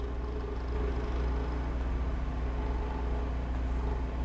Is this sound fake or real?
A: real